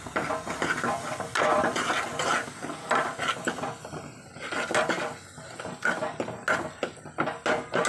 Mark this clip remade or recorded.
recorded